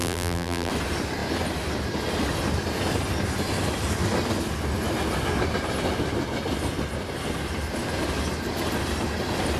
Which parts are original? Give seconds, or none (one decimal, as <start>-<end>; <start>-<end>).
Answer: 0.7-9.6